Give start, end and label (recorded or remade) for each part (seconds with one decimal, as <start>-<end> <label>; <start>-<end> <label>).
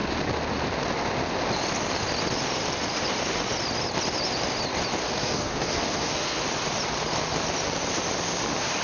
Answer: 0.0-5.0 recorded; 5.0-6.4 remade; 6.4-8.8 recorded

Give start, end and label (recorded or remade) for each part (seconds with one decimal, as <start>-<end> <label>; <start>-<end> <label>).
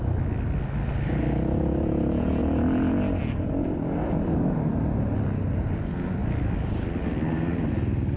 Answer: 0.0-8.2 recorded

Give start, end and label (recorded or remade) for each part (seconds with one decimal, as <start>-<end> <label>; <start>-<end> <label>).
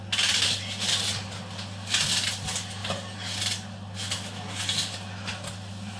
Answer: 0.0-6.0 recorded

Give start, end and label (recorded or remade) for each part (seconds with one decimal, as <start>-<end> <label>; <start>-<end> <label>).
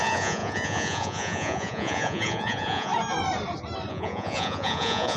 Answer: 0.0-2.9 remade; 2.9-3.9 recorded; 3.9-5.2 remade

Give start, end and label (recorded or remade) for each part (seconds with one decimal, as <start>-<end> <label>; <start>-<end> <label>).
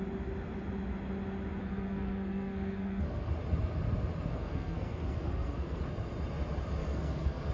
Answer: 0.0-1.6 recorded; 1.6-3.3 remade; 3.3-4.3 recorded; 4.3-5.8 remade; 5.8-6.8 recorded; 6.8-7.5 remade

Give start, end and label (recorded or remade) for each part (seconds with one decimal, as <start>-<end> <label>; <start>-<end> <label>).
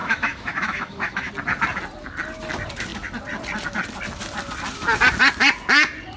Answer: 0.0-1.3 remade; 1.3-6.2 recorded